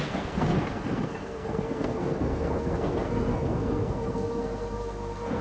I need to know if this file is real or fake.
fake